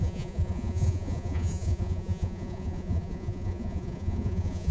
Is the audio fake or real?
fake